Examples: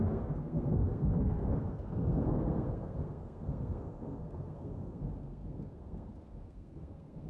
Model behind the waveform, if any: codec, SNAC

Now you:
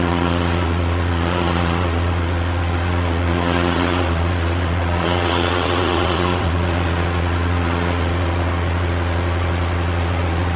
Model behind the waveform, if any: vocoder, Vocos